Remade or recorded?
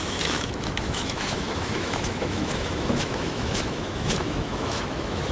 remade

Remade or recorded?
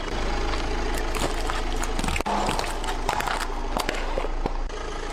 recorded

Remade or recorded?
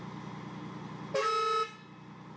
recorded